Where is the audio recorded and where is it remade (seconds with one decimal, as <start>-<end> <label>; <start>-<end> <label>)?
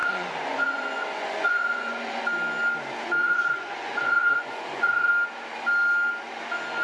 0.0-2.2 remade; 2.2-3.2 recorded; 3.2-5.1 remade; 5.1-6.8 recorded